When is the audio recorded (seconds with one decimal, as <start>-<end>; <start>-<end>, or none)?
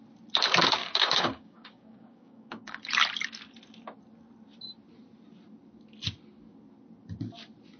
0.0-0.8; 2.9-7.8